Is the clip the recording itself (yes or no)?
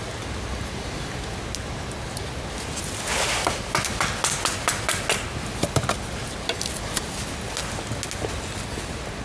yes